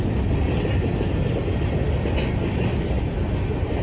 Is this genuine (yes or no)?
yes